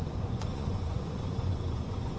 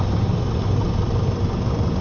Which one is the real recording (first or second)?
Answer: second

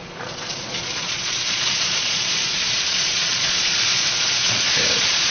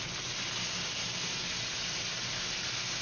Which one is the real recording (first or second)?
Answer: second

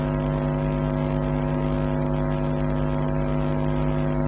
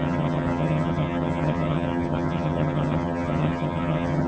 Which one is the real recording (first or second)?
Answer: first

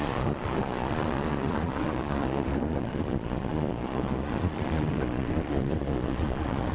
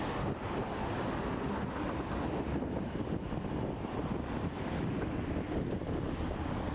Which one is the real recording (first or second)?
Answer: second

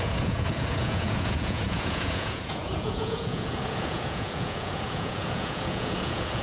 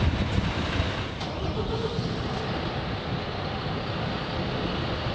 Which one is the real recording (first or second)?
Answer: second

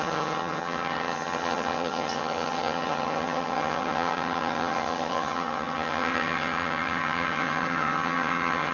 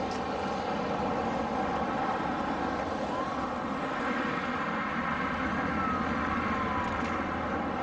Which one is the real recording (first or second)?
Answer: second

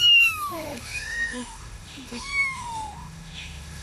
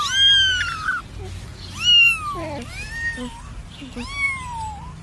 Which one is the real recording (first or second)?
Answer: second